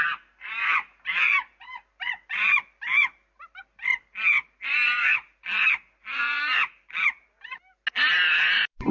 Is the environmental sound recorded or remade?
recorded